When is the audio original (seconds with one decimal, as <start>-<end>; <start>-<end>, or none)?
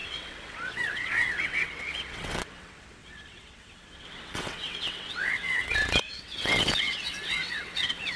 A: none